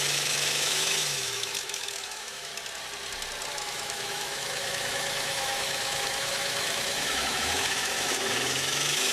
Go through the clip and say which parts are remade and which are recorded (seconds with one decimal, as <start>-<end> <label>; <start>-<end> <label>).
0.0-2.5 remade; 2.5-3.5 recorded; 3.5-9.1 remade